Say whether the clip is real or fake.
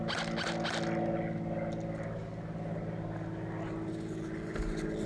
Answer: real